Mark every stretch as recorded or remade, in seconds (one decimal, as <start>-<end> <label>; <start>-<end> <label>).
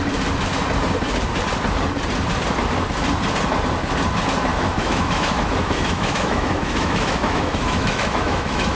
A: 0.0-4.5 recorded; 4.5-8.8 remade